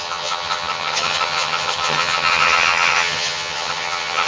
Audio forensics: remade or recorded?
remade